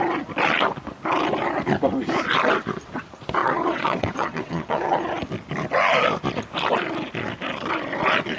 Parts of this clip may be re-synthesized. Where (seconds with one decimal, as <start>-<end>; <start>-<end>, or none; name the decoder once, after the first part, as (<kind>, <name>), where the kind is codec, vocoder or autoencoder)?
3.4-5.0 (vocoder, WaveNeXt)